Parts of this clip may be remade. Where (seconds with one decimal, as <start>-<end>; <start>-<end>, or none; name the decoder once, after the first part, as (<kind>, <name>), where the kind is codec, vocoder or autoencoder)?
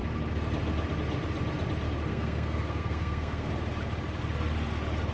2.1-3.5 (codec, SNAC)